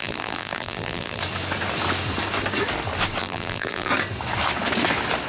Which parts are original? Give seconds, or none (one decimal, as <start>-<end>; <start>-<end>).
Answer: 1.2-3.2; 3.9-5.3